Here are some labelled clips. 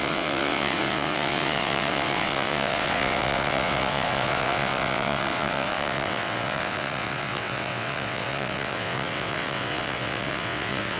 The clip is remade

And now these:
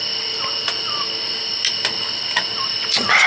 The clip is recorded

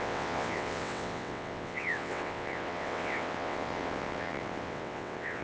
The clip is remade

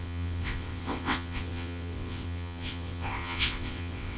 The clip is remade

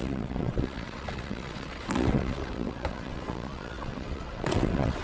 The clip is remade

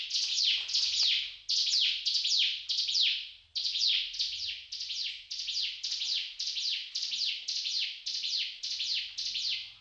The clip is recorded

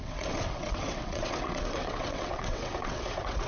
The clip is remade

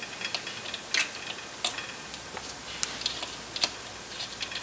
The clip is recorded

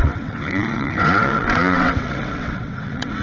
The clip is remade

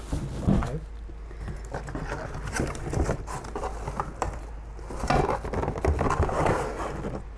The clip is recorded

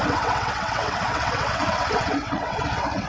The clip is remade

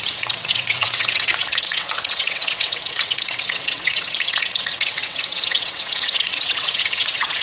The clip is remade